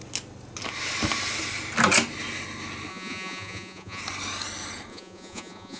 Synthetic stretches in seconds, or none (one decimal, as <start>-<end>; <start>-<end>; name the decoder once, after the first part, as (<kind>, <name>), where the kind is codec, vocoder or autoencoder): 2.9-4.0 (vocoder, Vocos); 4.9-5.8